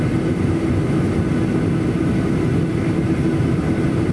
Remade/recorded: recorded